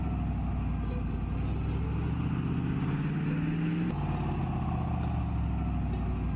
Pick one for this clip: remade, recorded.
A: recorded